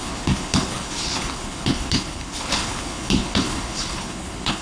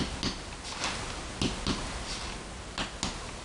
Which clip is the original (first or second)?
second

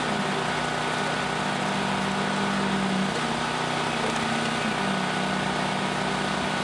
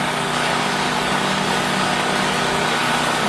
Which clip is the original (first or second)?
first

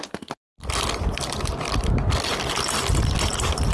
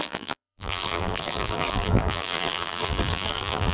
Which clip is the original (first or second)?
first